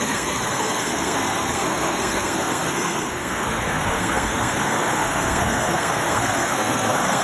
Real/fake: fake